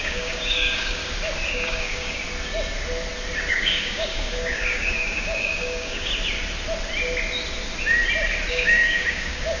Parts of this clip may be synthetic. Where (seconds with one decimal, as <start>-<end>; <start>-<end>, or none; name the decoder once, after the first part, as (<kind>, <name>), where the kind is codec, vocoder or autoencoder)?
0.0-1.0 (codec, DAC); 1.5-2.2; 3.5-6.1; 8.5-9.6